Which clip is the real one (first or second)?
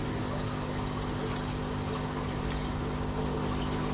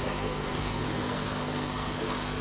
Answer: first